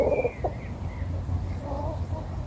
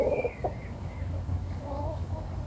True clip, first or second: first